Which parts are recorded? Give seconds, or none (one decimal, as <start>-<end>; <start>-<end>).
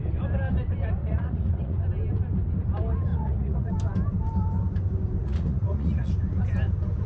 0.0-1.0; 1.8-3.1; 3.7-5.2; 6.1-7.1